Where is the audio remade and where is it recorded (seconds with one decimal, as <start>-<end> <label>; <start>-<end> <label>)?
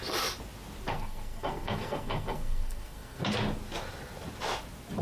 0.0-0.9 recorded; 0.9-3.2 remade; 3.2-5.0 recorded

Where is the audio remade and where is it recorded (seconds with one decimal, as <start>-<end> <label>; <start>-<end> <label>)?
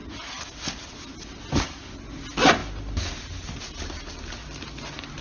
0.0-2.6 recorded; 2.6-3.6 remade; 3.6-4.0 recorded; 4.0-5.2 remade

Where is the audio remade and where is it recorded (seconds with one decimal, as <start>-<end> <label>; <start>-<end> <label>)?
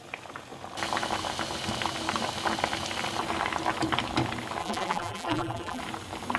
0.0-4.6 recorded; 4.6-5.8 remade; 5.8-6.4 recorded